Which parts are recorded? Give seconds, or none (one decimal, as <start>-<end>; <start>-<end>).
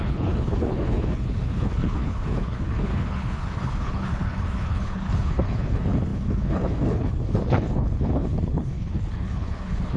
none